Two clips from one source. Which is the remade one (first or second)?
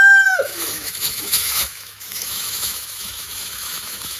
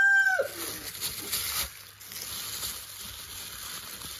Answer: first